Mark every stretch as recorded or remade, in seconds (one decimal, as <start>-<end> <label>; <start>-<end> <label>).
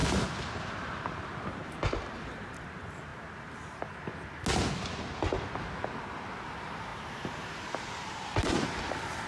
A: 0.0-0.6 recorded; 0.6-3.1 remade; 3.1-6.3 recorded; 6.3-9.3 remade